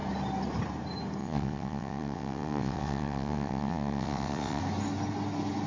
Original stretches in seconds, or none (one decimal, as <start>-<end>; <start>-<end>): 0.0-1.2; 4.6-5.7